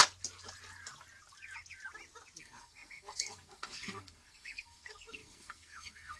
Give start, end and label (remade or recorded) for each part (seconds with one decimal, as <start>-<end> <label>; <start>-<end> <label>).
0.0-2.4 recorded; 2.4-6.2 remade